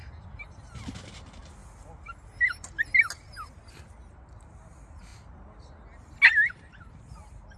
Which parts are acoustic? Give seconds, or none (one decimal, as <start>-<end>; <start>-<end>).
0.0-7.6